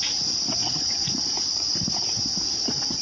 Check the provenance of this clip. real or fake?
fake